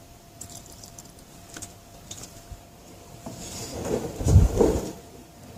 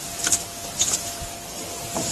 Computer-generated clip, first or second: first